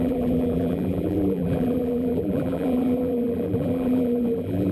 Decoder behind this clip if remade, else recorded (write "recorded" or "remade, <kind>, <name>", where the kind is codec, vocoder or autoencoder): remade, vocoder, BigVGAN v2